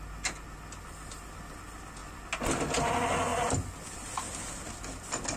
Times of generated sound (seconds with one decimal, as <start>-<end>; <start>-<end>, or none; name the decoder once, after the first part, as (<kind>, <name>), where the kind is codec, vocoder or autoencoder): none